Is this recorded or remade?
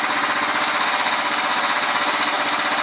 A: recorded